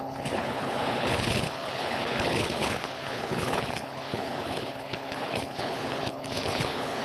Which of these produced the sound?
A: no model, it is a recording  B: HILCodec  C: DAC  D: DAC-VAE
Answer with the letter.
B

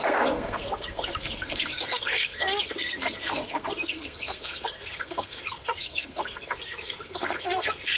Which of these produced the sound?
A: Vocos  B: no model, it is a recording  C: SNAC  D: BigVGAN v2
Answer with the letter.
C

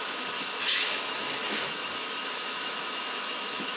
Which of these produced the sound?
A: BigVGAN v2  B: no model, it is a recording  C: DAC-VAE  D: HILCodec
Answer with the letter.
C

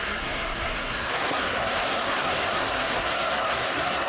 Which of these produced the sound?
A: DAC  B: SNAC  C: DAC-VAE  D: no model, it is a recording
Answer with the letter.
B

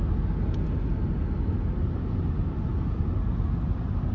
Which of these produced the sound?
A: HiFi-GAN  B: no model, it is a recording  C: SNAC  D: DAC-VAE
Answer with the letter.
B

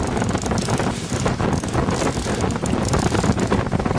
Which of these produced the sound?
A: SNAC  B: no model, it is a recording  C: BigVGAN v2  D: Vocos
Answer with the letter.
C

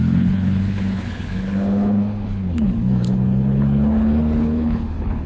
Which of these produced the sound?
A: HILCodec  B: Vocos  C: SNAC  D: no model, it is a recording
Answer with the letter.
A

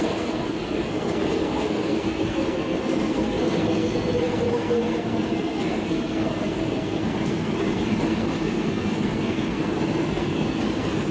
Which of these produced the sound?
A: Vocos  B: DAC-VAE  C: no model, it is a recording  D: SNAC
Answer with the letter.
D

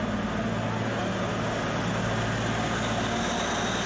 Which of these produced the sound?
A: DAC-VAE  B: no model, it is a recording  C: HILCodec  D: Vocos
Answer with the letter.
B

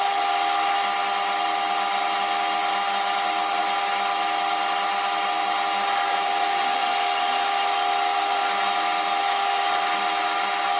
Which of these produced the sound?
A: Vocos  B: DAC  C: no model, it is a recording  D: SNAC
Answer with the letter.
C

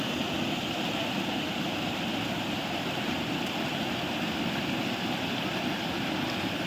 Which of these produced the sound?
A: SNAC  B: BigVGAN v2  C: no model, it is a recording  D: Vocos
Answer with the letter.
C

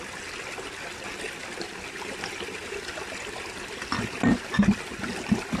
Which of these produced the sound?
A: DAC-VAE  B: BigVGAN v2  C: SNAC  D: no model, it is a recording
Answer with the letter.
D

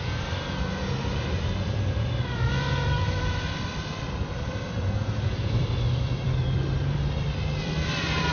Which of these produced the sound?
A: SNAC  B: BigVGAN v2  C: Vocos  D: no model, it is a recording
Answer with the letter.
B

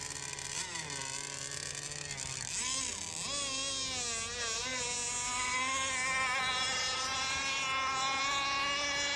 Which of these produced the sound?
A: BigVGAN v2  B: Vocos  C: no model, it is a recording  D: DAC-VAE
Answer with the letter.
C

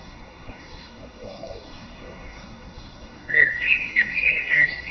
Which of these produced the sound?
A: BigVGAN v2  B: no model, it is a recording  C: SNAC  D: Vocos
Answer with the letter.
C